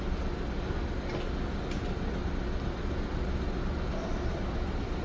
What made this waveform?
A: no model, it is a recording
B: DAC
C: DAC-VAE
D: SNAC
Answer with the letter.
A